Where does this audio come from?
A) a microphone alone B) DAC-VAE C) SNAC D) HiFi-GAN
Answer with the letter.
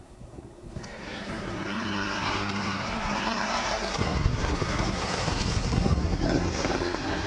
C